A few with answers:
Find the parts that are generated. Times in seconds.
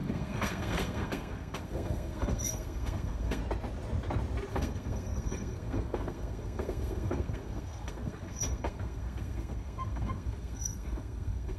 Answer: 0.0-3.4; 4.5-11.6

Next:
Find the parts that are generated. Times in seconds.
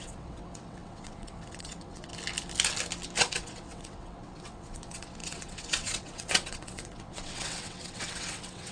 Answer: 0.0-2.1; 3.2-8.7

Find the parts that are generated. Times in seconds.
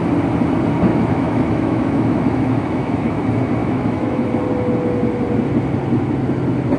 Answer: 0.9-3.2; 3.6-4.3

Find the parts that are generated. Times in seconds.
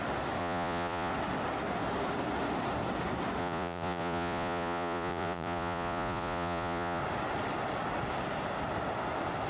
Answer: 0.4-1.1; 3.4-7.0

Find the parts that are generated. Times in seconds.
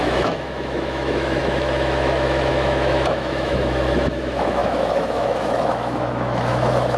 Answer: 0.0-7.0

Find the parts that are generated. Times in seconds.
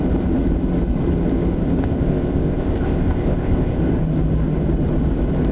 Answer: 1.8-3.8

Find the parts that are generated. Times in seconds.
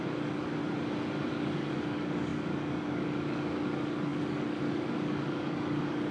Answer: 0.0-0.6; 1.3-6.1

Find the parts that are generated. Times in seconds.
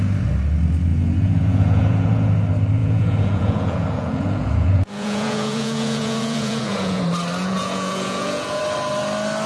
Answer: 0.9-2.3; 2.8-7.0; 7.4-8.6